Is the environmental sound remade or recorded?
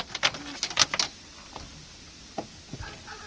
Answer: recorded